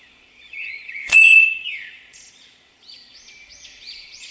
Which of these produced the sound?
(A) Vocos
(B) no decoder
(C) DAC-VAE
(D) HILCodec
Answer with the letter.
A